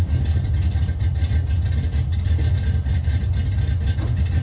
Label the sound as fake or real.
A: real